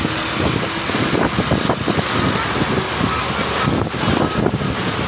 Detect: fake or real real